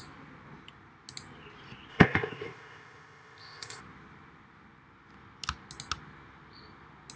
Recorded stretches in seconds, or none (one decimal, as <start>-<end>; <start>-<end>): 0.0-1.9; 3.8-7.2